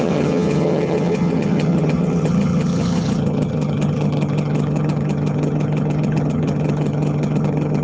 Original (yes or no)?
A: no